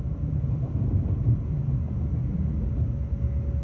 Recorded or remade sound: recorded